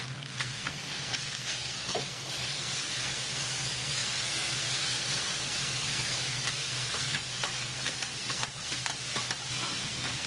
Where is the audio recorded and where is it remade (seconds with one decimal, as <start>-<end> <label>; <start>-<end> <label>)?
0.0-8.9 remade; 8.9-9.5 recorded; 9.5-10.3 remade